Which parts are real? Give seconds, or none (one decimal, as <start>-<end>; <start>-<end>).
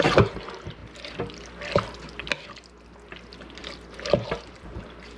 0.0-3.6; 4.3-5.2